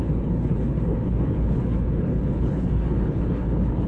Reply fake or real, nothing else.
fake